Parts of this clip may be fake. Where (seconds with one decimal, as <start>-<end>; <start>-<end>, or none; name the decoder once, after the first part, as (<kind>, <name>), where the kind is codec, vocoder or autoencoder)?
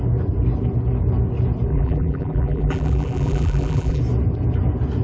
1.7-4.0 (vocoder, BigVGAN v2)